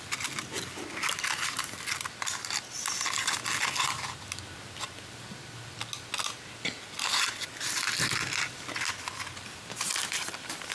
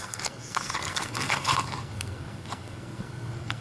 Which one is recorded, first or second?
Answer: first